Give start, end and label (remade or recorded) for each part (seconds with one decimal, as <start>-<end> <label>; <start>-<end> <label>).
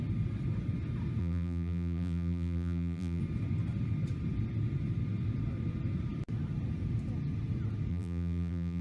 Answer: 0.0-1.2 recorded; 1.2-3.2 remade; 3.2-7.9 recorded; 7.9-8.8 remade